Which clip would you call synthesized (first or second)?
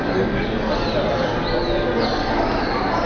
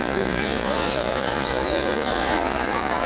second